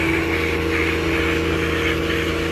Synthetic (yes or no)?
no